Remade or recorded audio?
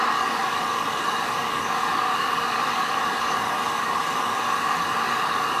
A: remade